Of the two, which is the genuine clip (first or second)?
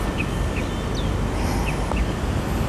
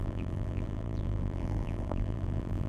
first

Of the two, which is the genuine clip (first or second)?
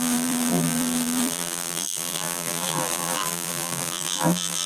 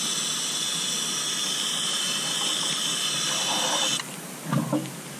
second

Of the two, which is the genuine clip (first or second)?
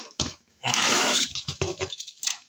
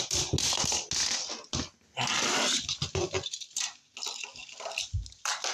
second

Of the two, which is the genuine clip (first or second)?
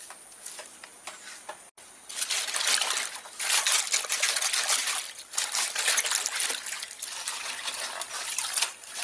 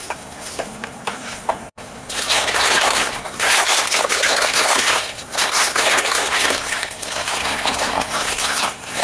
first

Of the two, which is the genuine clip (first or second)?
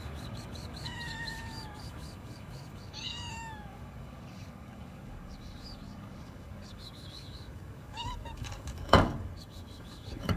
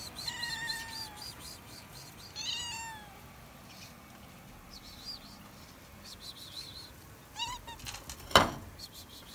second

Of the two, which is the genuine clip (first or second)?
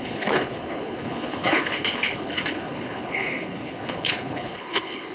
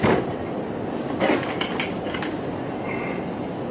second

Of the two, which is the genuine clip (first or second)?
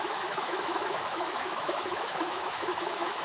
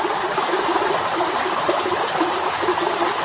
second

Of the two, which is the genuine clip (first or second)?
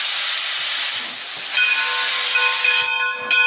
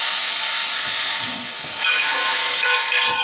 first